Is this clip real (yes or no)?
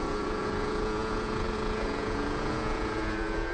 no